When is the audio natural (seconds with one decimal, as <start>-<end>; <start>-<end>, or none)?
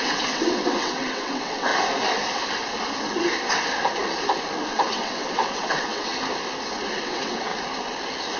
1.7-4.7; 6.1-6.9; 7.5-8.4